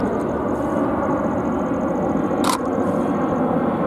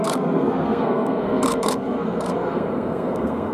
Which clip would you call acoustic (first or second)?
first